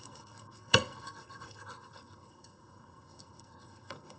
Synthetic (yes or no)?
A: yes